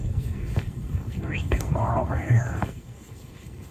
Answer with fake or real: fake